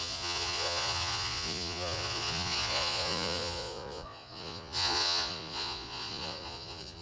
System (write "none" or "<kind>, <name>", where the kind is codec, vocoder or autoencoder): vocoder, Vocos